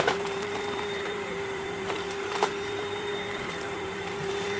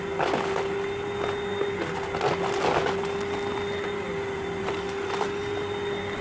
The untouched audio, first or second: second